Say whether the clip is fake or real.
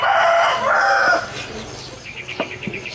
real